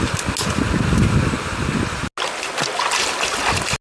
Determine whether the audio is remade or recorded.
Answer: recorded